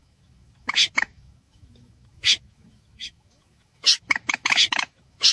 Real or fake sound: fake